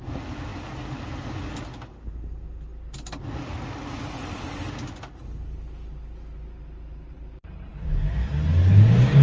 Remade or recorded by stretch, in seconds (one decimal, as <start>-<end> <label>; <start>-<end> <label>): 0.0-7.7 recorded; 7.7-8.3 remade; 8.3-9.2 recorded